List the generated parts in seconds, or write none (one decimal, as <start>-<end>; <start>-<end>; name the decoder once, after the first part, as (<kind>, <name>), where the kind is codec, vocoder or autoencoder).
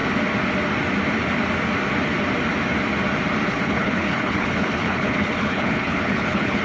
3.5-6.6 (codec, HILCodec)